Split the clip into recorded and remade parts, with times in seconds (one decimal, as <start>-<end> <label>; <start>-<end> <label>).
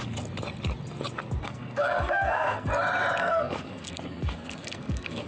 0.0-1.4 recorded; 1.4-2.7 remade; 2.7-3.2 recorded; 3.2-5.3 remade